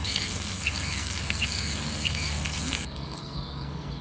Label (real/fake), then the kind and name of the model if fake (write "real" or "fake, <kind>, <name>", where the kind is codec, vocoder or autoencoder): fake, codec, SNAC